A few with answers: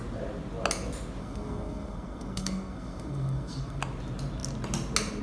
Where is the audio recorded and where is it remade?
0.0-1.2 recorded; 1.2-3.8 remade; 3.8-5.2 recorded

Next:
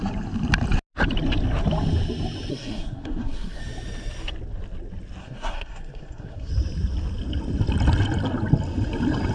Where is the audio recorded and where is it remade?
0.0-2.5 recorded; 2.5-3.6 remade; 3.6-5.2 recorded; 5.2-6.5 remade; 6.5-9.3 recorded

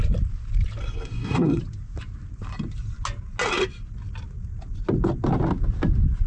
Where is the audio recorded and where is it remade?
0.0-0.8 recorded; 0.8-1.6 remade; 1.6-6.3 recorded